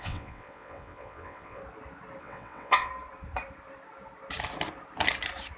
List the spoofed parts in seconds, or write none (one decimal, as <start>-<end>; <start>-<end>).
0.0-1.6; 2.2-2.9